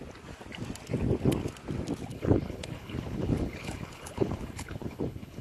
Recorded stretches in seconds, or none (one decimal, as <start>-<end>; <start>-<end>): 0.0-2.1